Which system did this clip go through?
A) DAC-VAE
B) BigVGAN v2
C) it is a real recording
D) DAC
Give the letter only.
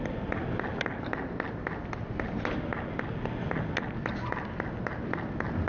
C